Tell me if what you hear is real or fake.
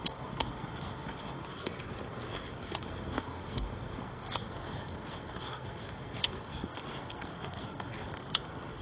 fake